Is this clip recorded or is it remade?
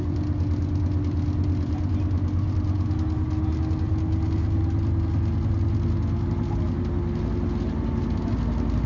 recorded